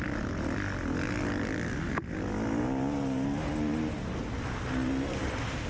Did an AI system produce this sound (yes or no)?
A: no